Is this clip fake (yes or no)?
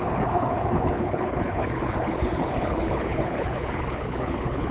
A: yes